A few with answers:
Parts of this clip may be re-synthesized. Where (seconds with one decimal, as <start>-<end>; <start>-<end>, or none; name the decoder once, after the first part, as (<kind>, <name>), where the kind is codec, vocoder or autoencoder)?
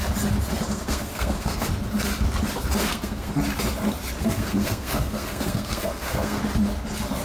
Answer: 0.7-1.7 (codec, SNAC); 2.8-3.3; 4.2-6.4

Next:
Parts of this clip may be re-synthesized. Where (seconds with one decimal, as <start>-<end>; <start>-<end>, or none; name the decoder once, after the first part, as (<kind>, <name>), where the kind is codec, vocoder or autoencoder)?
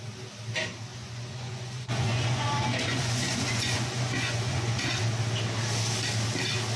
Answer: 0.9-5.0 (vocoder, Vocos)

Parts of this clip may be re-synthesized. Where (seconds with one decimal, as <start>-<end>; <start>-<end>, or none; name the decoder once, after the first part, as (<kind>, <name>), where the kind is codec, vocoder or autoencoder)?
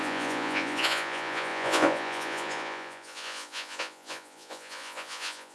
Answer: 0.0-5.5 (vocoder, Vocos)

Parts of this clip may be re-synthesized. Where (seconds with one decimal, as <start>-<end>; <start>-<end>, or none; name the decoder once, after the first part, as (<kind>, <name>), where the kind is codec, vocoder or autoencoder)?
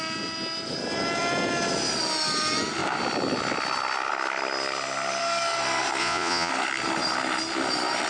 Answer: 6.0-6.5 (vocoder, Vocos)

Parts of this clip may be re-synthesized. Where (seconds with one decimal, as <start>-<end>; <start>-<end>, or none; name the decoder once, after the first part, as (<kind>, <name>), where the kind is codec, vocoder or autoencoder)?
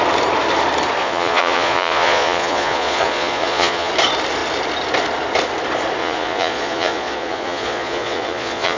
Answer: 1.0-3.9 (vocoder, Vocos); 6.0-8.8